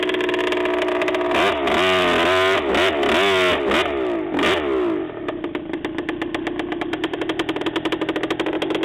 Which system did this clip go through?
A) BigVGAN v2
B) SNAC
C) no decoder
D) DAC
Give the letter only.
C